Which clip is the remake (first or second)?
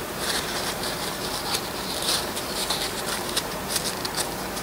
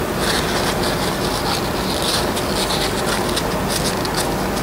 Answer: first